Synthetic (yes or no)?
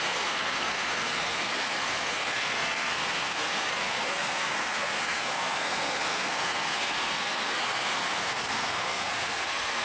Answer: yes